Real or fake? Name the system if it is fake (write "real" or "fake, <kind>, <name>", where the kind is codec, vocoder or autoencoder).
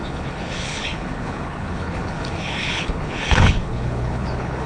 fake, codec, HILCodec